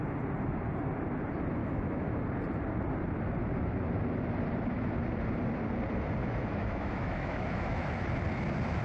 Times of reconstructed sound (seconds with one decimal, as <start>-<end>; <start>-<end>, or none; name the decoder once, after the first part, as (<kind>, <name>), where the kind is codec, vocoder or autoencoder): 1.6-2.2 (autoencoder, DAC-VAE); 6.2-7.9